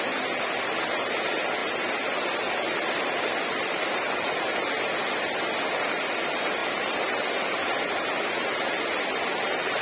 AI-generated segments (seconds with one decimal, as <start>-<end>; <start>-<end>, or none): 1.6-4.4; 6.6-9.2